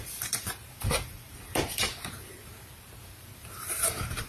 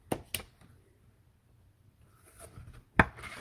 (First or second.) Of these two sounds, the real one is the second